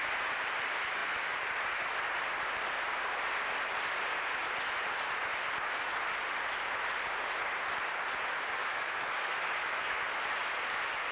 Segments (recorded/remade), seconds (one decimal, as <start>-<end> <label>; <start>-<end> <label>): 0.0-8.6 recorded; 8.6-10.0 remade; 10.0-11.1 recorded